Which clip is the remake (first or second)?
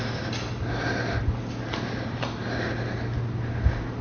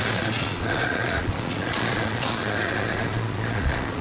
second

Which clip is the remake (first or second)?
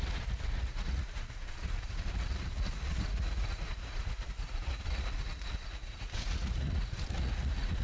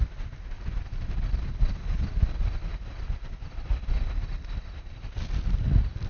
first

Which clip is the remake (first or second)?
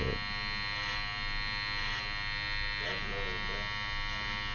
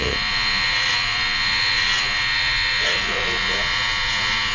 second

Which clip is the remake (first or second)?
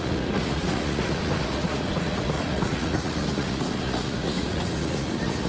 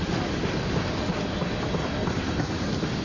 first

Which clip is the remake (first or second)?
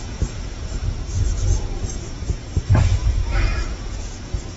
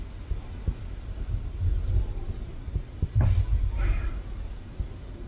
first